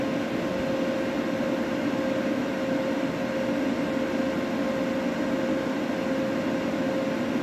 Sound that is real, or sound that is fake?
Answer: real